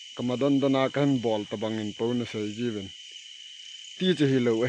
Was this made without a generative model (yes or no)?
yes